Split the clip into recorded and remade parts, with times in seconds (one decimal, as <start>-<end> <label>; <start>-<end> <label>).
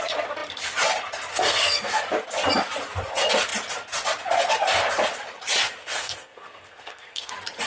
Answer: 0.0-1.3 recorded; 1.3-2.0 remade; 2.0-5.8 recorded; 5.8-7.3 remade; 7.3-7.7 recorded